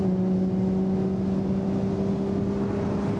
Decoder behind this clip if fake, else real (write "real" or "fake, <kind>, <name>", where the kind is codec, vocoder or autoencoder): real